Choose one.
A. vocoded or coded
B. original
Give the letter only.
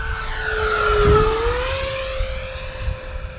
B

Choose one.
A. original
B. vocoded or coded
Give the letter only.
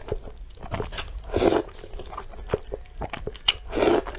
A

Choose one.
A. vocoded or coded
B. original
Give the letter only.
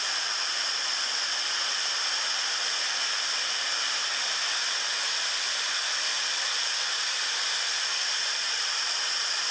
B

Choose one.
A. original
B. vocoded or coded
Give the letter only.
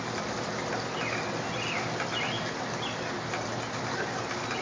A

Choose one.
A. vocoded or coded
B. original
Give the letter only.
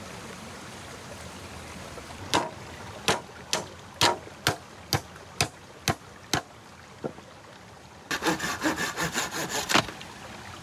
B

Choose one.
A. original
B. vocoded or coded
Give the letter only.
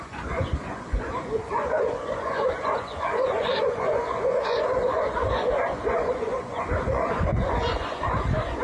B